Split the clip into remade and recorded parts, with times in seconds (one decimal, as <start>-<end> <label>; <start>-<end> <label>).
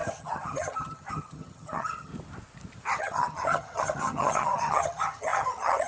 0.0-2.1 remade; 2.1-3.0 recorded; 3.0-5.9 remade